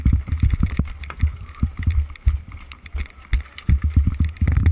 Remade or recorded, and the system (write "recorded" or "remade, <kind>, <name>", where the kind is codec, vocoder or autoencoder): remade, vocoder, BigVGAN v2